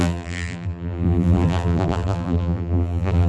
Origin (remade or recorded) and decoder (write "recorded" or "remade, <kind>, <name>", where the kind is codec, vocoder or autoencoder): remade, vocoder, BigVGAN v2